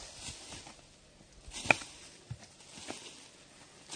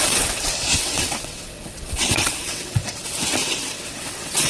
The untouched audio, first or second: first